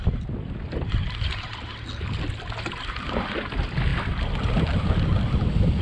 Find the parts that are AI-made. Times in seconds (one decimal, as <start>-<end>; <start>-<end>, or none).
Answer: none